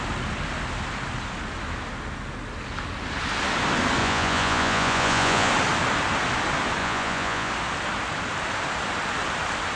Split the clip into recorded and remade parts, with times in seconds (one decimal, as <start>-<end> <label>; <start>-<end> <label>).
0.0-4.0 recorded; 4.0-5.5 remade; 5.5-6.8 recorded; 6.8-7.5 remade; 7.5-9.8 recorded